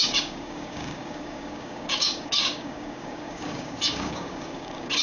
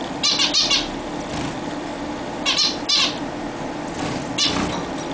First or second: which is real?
second